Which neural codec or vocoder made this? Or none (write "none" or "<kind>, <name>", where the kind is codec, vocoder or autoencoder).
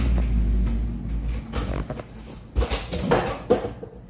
none